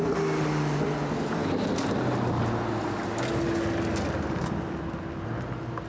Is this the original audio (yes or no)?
yes